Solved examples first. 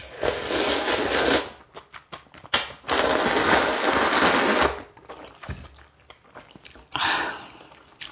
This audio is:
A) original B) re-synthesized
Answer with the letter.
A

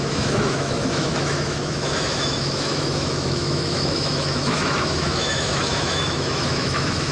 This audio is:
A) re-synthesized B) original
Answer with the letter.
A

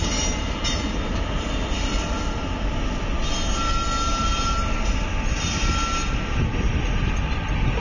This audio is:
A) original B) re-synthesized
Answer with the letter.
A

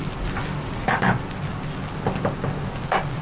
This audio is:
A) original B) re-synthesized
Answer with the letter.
A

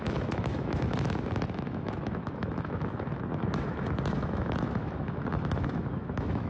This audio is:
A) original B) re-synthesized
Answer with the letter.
B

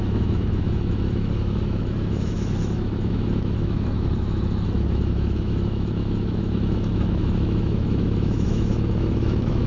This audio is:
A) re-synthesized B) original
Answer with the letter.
A